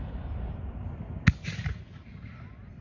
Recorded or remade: recorded